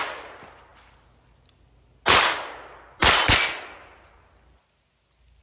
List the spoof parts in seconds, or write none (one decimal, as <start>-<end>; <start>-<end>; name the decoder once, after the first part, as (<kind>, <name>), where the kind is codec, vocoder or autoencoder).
none